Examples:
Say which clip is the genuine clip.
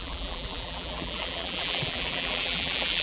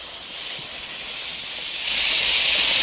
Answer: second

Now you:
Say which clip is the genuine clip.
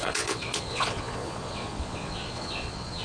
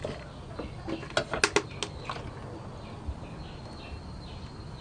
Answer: second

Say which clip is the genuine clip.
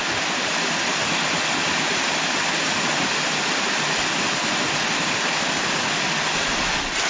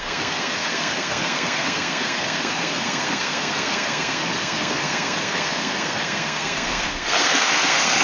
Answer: first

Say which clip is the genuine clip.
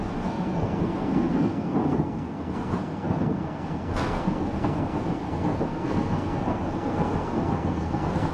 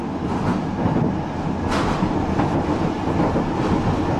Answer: second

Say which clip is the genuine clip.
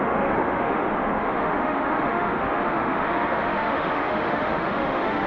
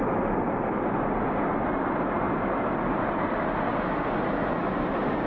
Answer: second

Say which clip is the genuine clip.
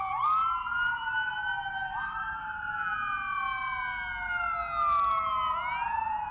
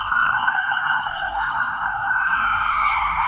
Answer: first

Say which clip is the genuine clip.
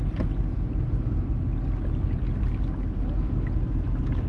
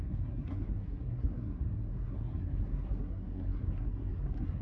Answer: first